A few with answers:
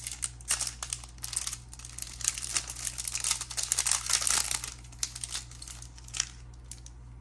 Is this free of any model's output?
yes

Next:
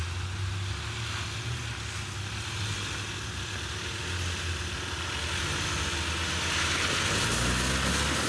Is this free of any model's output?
yes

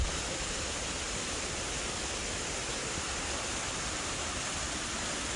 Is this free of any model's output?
yes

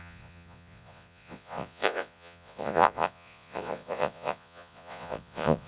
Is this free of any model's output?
no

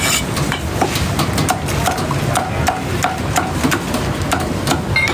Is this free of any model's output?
yes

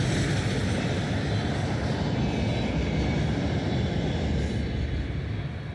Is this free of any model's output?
yes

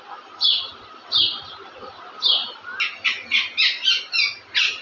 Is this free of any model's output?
yes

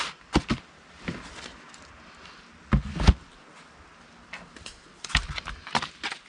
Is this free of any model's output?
yes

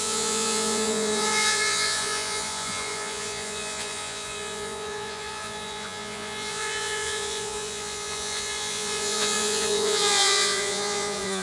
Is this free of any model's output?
no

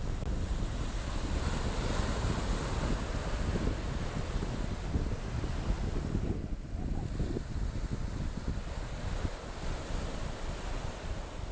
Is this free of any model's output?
yes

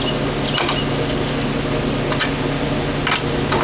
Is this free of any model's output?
yes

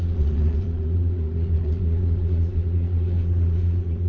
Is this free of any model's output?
no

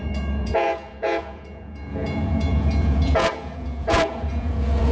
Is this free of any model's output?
no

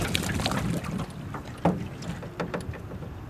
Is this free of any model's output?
yes